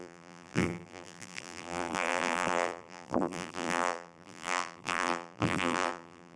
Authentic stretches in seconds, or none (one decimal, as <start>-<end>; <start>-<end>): none